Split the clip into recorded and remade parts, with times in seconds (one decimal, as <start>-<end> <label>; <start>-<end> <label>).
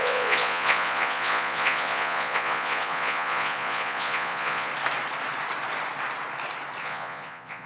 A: 0.0-4.7 remade; 4.7-6.8 recorded; 6.8-7.7 remade